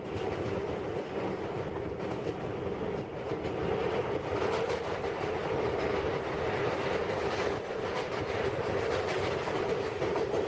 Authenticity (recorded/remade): recorded